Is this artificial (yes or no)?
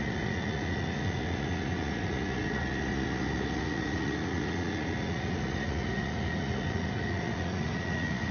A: yes